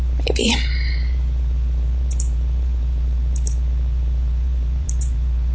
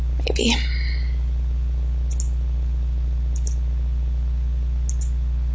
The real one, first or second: second